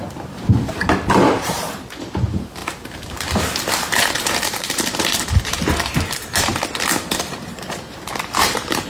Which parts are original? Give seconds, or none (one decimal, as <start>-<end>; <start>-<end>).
6.5-7.1